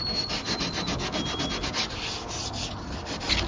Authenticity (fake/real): real